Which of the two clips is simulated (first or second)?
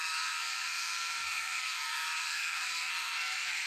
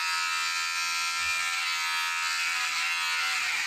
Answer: first